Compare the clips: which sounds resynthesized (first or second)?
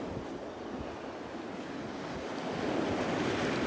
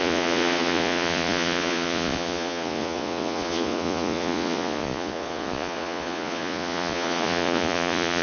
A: second